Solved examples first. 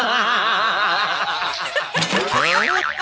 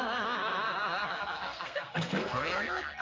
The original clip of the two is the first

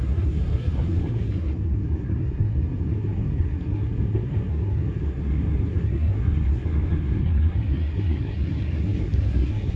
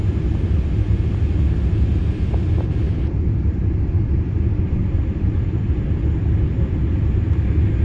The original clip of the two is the second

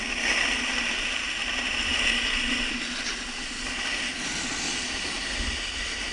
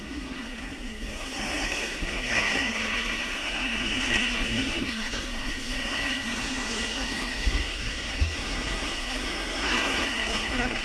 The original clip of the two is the first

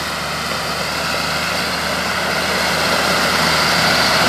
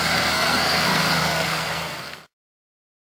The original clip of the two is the first